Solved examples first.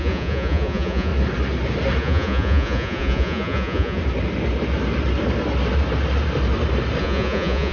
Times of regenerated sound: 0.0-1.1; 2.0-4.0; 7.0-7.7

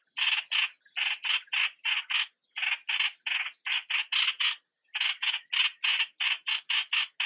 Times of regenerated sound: none

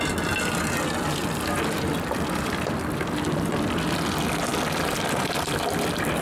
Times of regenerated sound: none

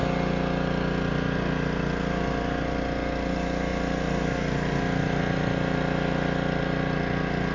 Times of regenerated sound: none

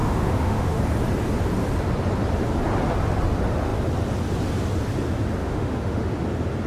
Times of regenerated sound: 0.0-0.8; 5.4-6.1